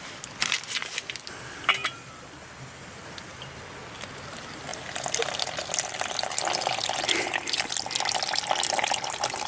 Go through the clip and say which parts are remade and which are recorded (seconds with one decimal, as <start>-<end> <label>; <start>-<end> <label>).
0.0-9.5 recorded

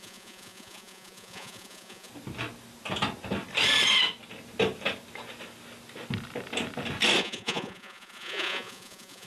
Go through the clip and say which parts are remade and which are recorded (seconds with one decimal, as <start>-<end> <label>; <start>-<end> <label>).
0.0-2.1 remade; 2.1-7.2 recorded; 7.2-9.3 remade

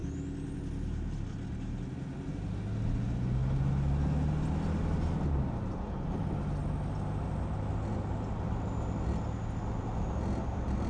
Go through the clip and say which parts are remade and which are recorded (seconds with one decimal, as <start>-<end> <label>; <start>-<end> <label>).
0.0-10.9 recorded

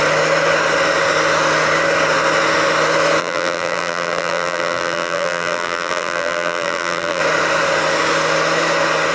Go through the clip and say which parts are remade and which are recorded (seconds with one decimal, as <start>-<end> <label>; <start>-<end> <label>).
0.0-3.2 recorded; 3.2-7.2 remade; 7.2-9.1 recorded

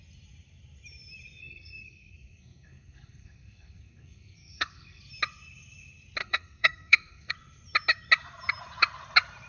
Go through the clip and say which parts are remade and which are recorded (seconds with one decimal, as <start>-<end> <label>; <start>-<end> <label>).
0.0-1.4 recorded; 1.4-5.0 remade; 5.0-6.2 recorded; 6.2-7.3 remade; 7.3-9.5 recorded